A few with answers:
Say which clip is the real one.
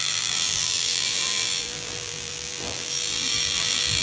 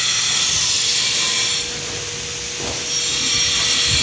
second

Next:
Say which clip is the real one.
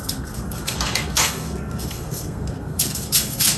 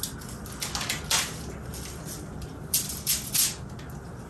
second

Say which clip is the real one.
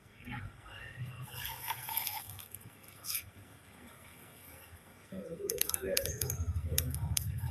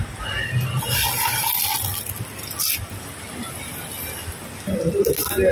second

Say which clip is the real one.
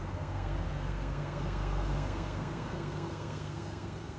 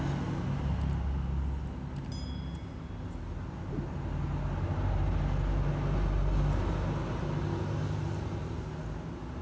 second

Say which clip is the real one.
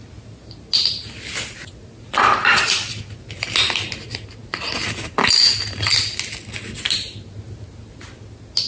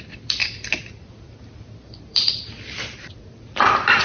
first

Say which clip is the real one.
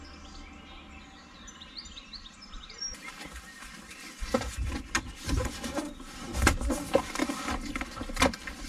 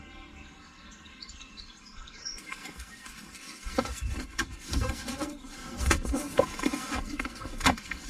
first